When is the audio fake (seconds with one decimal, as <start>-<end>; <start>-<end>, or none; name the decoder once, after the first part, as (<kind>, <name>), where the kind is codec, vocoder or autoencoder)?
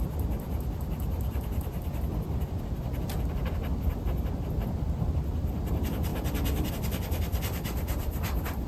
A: 0.0-6.1 (vocoder, BigVGAN v2); 6.7-8.7